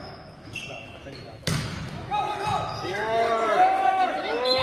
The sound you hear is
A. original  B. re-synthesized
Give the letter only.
B